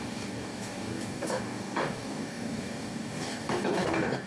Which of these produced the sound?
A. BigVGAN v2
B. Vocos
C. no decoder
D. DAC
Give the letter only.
D